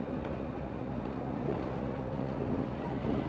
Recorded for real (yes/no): no